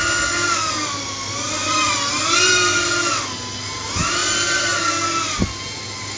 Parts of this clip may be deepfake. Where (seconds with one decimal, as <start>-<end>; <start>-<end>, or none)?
none

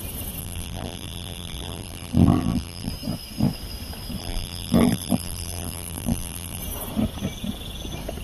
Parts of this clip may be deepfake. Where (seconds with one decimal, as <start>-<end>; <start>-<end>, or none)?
0.4-2.9; 4.2-6.6

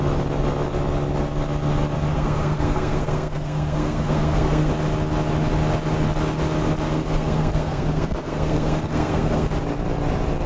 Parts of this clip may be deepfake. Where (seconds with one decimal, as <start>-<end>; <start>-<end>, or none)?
2.1-4.7; 6.9-9.5